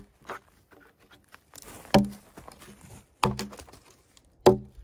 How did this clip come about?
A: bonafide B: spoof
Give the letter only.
A